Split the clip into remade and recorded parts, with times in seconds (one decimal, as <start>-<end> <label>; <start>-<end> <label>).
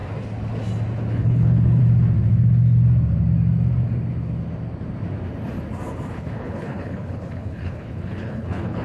0.0-1.1 recorded; 1.1-1.8 remade; 1.8-6.1 recorded; 6.1-8.8 remade